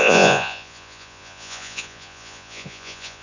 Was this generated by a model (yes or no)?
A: yes